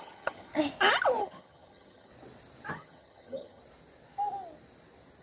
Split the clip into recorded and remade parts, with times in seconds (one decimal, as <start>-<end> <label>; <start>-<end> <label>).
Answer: 0.0-0.5 remade; 0.5-1.2 recorded; 1.2-2.1 remade; 2.1-2.7 recorded; 2.7-3.6 remade; 3.6-5.2 recorded